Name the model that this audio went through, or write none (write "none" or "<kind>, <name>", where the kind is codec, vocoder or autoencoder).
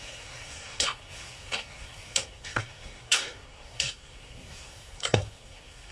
codec, SNAC